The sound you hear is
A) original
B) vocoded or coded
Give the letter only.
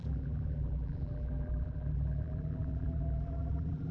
B